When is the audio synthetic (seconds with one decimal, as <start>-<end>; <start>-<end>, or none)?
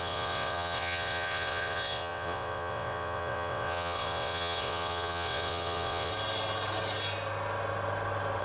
0.0-6.1